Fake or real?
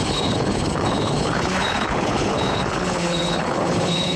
fake